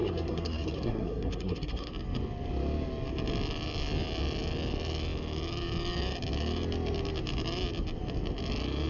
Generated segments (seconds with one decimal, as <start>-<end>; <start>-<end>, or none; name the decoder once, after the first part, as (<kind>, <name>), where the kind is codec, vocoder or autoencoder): 0.0-1.9 (codec, SNAC)